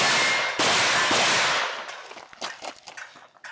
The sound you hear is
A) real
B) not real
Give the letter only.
A